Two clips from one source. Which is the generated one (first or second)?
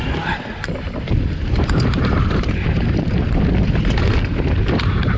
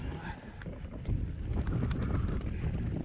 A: first